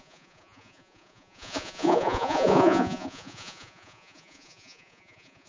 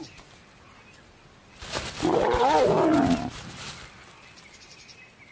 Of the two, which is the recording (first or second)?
second